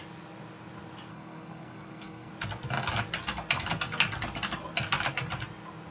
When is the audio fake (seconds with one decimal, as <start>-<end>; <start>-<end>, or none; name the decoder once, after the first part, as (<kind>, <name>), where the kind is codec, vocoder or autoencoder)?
1.1-2.3 (codec, SNAC)